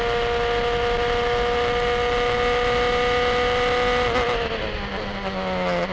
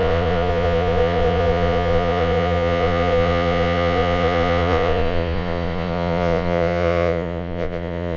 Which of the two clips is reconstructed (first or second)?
second